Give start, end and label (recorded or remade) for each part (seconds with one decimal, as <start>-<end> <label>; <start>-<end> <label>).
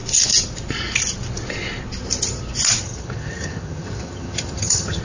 0.0-2.8 recorded; 2.8-5.0 remade